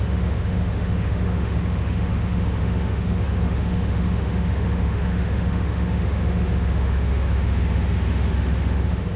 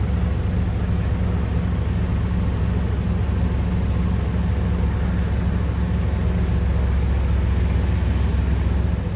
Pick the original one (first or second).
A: second